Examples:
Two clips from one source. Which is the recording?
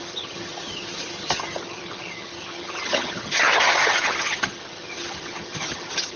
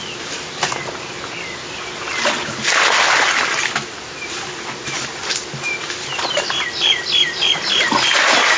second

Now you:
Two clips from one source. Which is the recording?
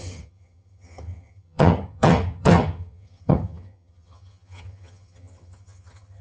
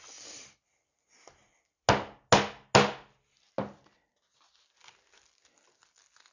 second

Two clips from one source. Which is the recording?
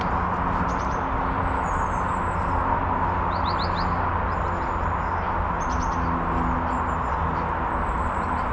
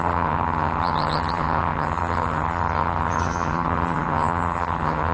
first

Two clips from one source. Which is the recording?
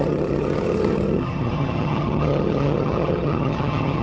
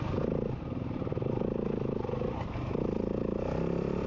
second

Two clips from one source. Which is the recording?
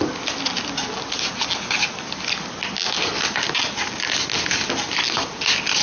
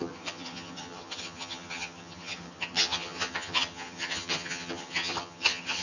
first